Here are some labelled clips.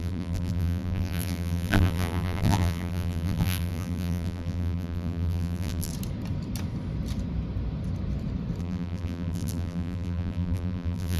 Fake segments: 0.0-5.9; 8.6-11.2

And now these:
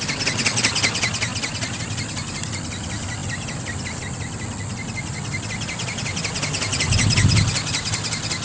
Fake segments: 3.2-4.0; 5.8-7.0

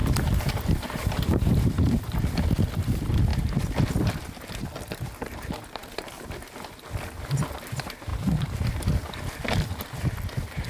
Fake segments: 0.0-2.2; 8.1-8.8

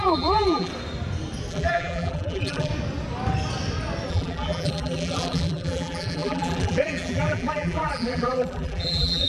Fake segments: 0.0-0.7; 1.5-2.7; 4.1-9.3